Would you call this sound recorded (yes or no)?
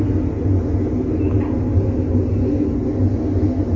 yes